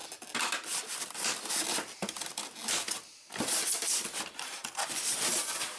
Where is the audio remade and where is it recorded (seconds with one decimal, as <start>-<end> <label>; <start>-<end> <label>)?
0.0-5.8 recorded